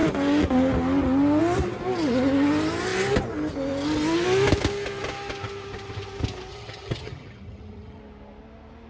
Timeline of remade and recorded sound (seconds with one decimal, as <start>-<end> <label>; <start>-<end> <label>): 0.0-6.5 recorded; 6.5-8.0 remade; 8.0-8.9 recorded